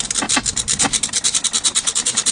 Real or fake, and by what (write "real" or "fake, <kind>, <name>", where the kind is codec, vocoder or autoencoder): real